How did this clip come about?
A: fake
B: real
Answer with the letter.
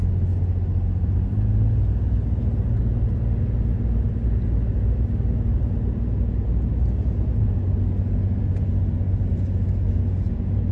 B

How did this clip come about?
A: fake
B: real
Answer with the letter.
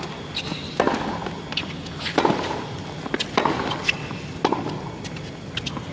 B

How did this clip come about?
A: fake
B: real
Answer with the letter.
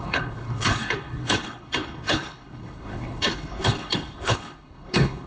A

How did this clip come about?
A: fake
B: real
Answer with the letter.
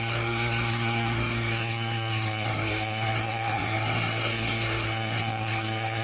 A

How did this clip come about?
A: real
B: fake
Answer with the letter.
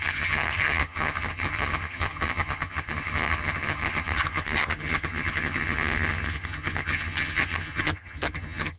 B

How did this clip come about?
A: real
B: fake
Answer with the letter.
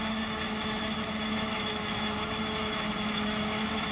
B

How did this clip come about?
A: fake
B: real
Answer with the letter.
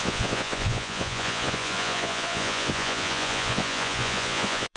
A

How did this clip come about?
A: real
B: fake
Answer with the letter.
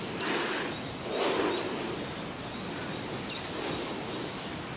A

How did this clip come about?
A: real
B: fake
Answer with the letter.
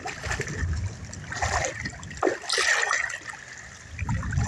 A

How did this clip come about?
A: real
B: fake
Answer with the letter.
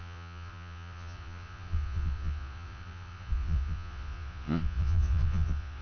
B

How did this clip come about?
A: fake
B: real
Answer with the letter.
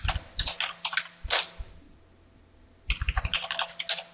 B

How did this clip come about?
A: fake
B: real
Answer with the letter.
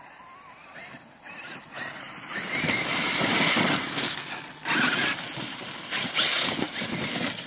B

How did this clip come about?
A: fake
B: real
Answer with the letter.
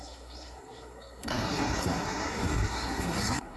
A